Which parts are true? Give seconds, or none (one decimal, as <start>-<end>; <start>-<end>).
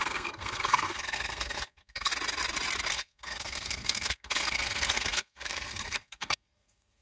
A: 2.1-2.9